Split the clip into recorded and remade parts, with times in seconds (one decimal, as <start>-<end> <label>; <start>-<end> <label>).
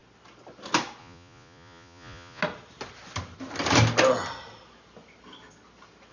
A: 0.0-1.0 recorded; 1.0-2.4 remade; 2.4-6.1 recorded